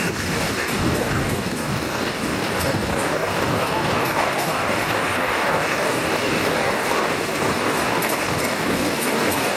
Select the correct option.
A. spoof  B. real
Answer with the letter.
A